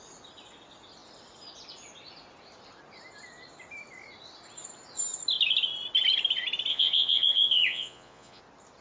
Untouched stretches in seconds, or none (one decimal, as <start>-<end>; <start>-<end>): 0.0-6.7; 8.4-8.8